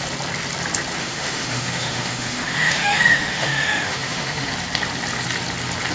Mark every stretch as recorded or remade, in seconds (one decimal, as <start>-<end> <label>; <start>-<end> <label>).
0.0-1.0 recorded; 1.0-4.5 remade; 4.5-5.9 recorded